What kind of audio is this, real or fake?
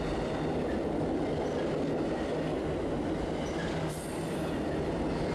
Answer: real